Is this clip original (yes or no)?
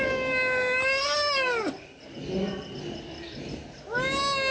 yes